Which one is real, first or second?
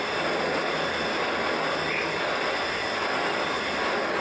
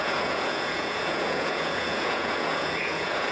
first